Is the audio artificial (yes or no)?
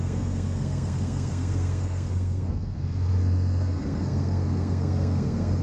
yes